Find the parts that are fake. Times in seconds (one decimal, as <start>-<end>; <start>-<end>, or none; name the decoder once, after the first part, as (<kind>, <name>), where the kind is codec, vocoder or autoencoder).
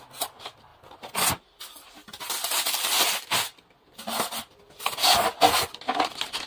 none